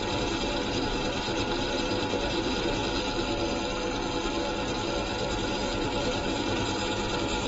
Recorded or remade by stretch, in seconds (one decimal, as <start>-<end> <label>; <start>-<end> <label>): 0.0-2.8 remade; 2.8-5.0 recorded; 5.0-7.5 remade